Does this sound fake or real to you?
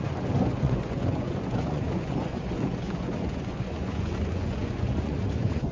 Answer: fake